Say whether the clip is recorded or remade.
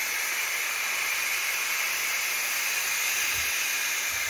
recorded